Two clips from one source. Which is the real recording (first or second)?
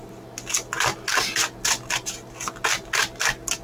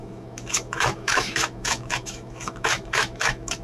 first